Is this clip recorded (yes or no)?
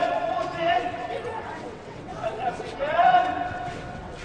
no